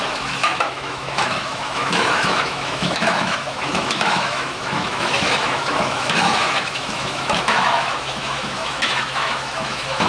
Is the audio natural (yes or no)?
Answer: no